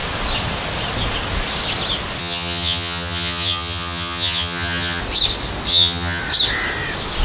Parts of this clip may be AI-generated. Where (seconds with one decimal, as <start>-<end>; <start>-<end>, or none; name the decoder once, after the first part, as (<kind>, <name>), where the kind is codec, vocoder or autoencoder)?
2.2-5.0 (vocoder, HiFi-GAN); 5.7-6.2